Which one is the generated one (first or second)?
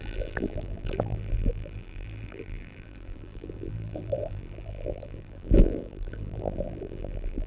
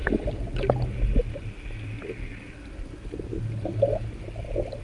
first